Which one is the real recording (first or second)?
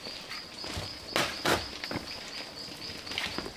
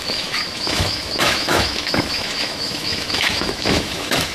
first